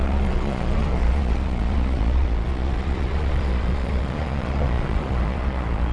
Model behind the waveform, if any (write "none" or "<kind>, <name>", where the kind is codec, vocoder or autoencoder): vocoder, Vocos